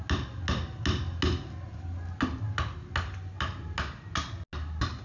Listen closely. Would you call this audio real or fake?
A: real